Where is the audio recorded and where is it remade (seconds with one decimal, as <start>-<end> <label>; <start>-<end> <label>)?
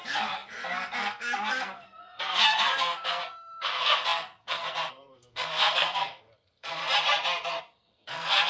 0.0-6.8 remade; 6.8-7.6 recorded; 7.6-8.5 remade